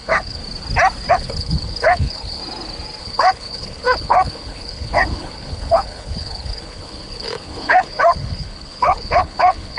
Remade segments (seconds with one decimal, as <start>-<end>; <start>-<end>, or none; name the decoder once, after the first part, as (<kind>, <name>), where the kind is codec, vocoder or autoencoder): 0.0-0.4 (codec, HILCodec); 1.1-2.4; 3.0-9.8